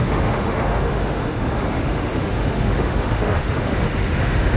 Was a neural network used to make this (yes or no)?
yes